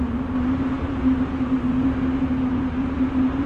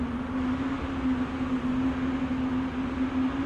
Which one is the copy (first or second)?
first